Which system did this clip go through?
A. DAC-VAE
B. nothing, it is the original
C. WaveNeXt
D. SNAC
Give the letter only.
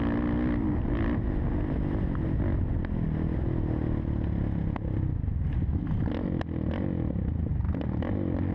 B